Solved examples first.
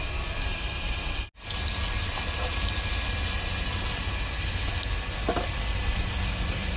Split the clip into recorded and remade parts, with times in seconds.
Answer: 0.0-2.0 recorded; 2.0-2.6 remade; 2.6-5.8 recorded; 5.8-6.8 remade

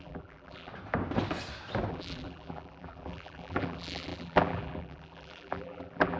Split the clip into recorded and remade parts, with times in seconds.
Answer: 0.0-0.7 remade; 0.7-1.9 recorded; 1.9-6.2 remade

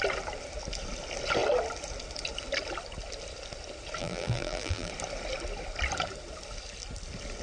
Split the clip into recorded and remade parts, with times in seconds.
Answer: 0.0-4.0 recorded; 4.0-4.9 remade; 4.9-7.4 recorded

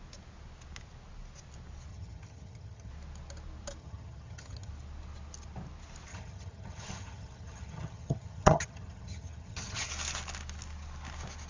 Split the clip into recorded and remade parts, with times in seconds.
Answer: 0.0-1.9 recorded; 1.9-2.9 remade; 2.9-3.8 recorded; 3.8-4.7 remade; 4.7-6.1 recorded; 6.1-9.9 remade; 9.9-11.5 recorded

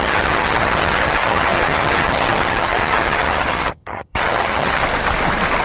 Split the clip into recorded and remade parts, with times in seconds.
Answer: 0.0-4.8 remade; 4.8-5.6 recorded

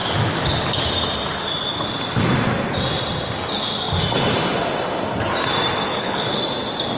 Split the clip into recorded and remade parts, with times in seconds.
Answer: 0.0-5.9 recorded; 5.9-6.4 remade; 6.4-7.0 recorded

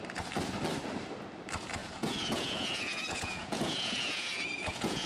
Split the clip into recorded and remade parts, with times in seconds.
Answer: 0.0-1.8 recorded; 1.8-5.1 remade

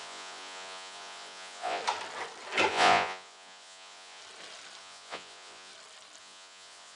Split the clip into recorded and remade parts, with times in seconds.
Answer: 0.0-1.8 remade; 1.8-2.7 recorded; 2.7-4.2 remade; 4.2-4.8 recorded; 4.8-5.7 remade; 5.7-6.2 recorded; 6.2-6.9 remade